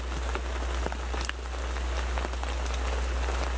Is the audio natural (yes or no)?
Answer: yes